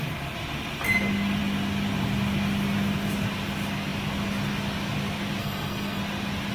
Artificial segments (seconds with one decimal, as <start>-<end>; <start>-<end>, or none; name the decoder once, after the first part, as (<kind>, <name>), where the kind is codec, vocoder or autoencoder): 5.4-6.0 (codec, SNAC)